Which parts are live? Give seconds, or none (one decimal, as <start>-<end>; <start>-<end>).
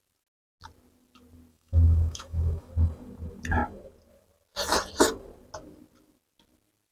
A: 0.0-1.5; 2.7-6.9